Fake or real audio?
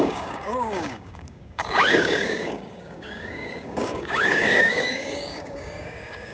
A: fake